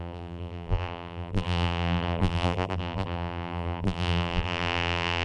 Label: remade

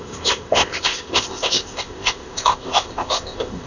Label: remade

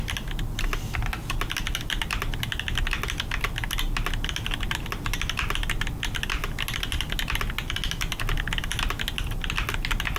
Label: recorded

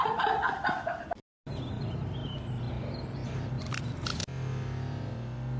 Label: recorded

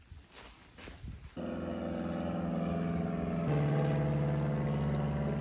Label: recorded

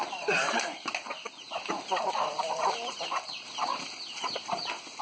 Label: recorded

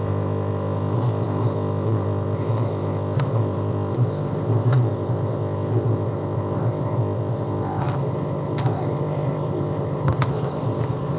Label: remade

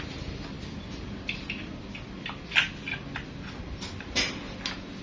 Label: recorded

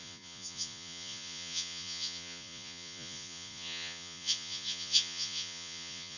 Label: remade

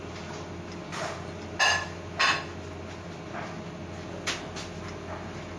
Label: recorded